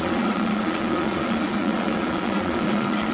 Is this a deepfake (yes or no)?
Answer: yes